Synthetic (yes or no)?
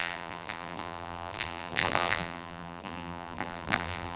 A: yes